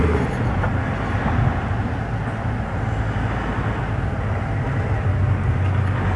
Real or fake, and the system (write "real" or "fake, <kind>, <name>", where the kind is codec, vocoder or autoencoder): real